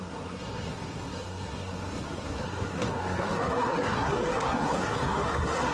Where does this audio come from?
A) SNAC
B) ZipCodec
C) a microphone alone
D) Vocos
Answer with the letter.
A